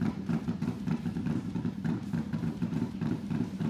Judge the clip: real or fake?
fake